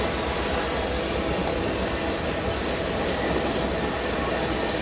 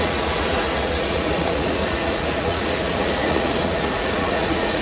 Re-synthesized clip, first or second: second